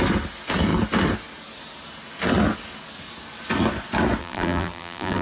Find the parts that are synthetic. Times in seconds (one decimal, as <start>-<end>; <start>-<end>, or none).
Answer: 4.2-5.2